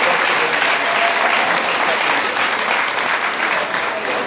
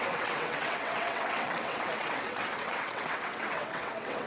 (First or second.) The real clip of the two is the first